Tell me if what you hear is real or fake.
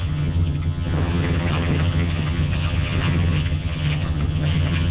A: fake